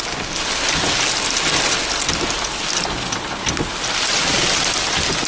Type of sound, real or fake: real